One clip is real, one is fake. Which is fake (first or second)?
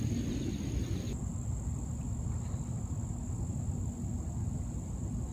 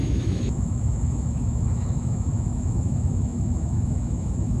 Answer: second